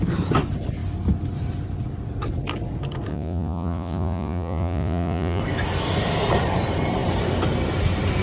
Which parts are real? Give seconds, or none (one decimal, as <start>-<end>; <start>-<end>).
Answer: 0.0-3.1; 5.4-8.2